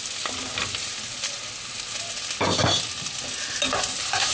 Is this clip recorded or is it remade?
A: recorded